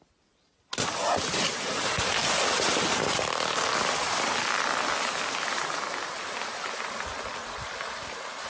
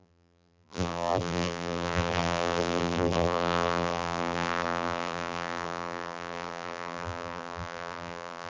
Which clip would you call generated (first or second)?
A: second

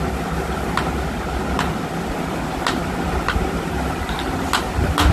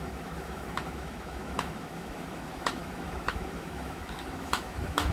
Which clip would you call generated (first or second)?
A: second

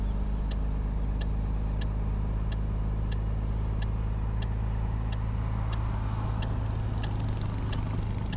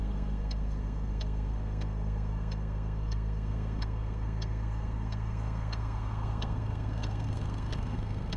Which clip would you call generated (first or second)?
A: second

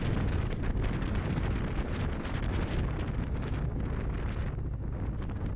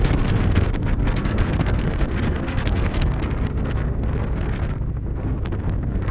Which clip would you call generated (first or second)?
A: second